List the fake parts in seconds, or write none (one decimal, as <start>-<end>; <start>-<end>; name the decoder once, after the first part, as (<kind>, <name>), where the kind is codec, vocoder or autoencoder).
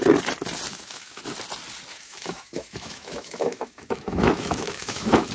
0.7-1.2 (autoencoder, DAC-VAE); 1.9-5.3